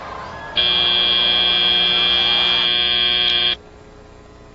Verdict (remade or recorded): recorded